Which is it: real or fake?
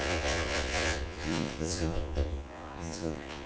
fake